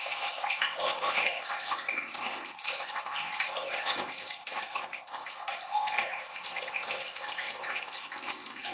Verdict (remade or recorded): remade